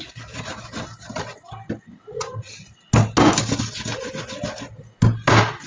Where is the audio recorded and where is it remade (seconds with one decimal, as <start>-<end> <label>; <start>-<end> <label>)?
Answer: 0.0-5.7 recorded